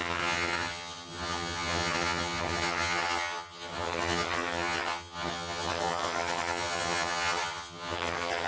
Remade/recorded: remade